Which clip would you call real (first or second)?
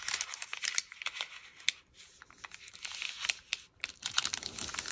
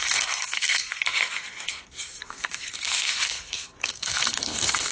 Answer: first